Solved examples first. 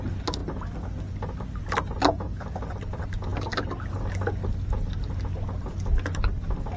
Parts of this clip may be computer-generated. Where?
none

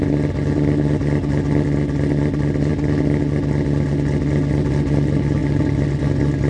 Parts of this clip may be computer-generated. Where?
none

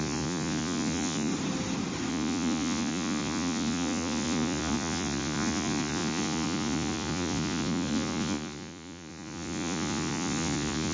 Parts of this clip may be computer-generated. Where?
0.0-1.3 (vocoder, Vocos); 2.1-10.9

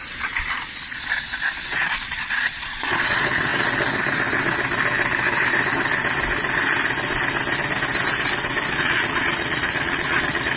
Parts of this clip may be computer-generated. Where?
0.0-3.5 (vocoder, Vocos); 8.7-10.6

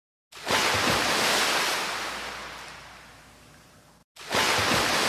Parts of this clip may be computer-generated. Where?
none

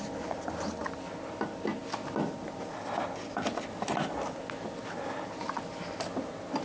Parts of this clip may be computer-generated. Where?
none

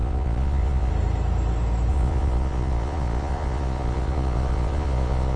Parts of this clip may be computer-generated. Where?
0.0-0.9 (vocoder, Vocos); 1.9-5.4

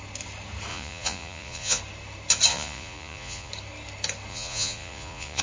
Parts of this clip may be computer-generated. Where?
0.7-1.8 (vocoder, Vocos); 2.5-3.5; 4.3-5.4